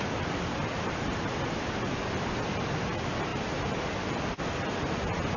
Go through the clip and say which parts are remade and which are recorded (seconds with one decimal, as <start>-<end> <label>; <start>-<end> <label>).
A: 0.0-5.4 recorded